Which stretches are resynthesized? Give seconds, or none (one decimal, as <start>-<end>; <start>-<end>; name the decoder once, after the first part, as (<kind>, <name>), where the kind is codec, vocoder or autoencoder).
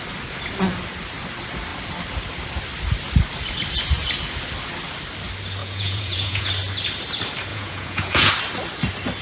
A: 5.6-6.5 (vocoder, Vocos); 7.5-8.3